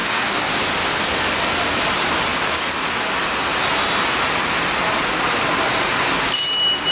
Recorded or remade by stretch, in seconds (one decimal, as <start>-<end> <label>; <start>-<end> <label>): 0.0-0.5 remade; 0.5-6.9 recorded